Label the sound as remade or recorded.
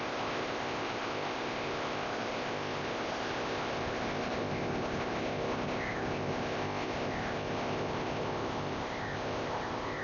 remade